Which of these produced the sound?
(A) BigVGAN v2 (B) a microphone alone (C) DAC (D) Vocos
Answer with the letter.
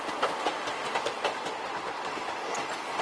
A